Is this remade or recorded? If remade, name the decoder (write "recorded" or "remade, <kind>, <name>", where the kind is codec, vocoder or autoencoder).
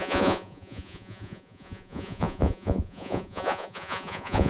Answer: remade, vocoder, Vocos